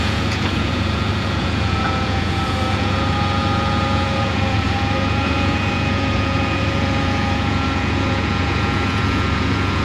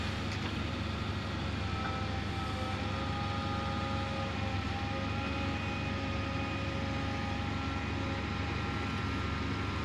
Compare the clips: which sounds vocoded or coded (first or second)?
first